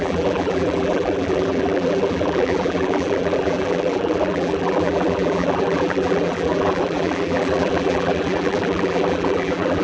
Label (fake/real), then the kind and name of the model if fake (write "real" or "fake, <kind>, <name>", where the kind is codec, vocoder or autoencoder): fake, vocoder, BigVGAN v2